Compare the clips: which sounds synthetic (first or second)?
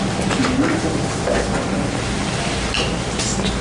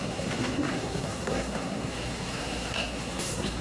second